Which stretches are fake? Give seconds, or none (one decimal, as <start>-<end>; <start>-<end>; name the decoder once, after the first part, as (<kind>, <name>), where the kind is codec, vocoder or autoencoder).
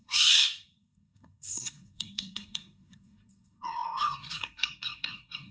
0.0-5.5 (codec, SNAC)